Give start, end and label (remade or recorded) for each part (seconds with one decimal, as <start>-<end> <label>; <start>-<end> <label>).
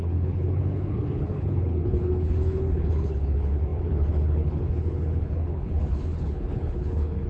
0.0-7.3 remade